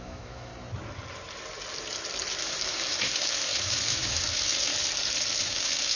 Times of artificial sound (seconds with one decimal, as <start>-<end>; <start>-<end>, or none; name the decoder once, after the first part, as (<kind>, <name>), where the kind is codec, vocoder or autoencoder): 0.0-0.5 (autoencoder, DAC-VAE); 2.4-4.7; 5.4-6.0

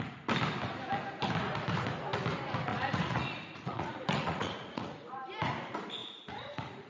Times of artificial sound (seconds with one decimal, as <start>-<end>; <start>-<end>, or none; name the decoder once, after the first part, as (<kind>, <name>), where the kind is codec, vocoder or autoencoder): 2.7-5.2 (vocoder, Vocos); 6.0-6.9

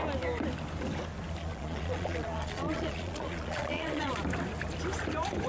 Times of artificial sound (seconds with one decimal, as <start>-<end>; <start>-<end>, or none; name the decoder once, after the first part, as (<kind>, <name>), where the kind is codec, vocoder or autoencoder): 1.4-4.1 (vocoder, Vocos)

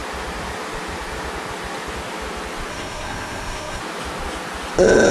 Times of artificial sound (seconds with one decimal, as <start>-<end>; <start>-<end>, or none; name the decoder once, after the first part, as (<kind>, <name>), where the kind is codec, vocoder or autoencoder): 2.7-3.8 (codec, SNAC)

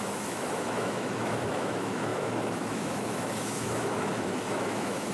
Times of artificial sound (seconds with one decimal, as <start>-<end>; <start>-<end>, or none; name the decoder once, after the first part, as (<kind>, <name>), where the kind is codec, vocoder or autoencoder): 0.0-5.1 (autoencoder, DAC-VAE)

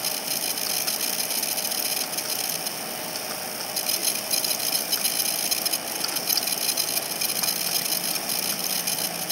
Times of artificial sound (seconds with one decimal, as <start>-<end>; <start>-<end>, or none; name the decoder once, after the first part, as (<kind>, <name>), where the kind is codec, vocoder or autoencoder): 4.0-5.1 (vocoder, BigVGAN v2)